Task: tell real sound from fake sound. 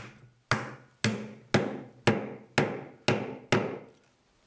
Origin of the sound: real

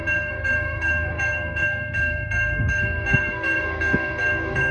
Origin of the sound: fake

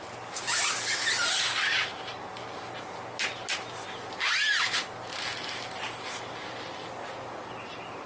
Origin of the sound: real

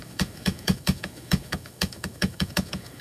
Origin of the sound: fake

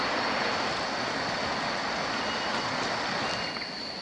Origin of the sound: real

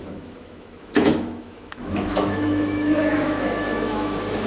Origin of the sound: fake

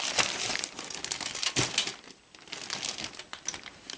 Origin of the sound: real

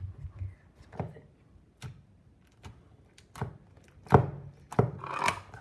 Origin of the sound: real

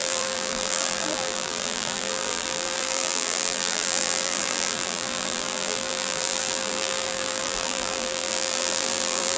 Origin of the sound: fake